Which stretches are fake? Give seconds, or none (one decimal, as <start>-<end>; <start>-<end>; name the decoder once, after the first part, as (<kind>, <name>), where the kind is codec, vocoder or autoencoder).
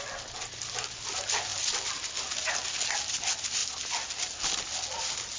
none